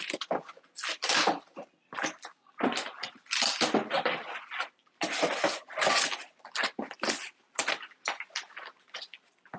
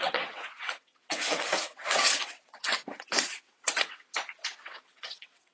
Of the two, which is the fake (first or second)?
second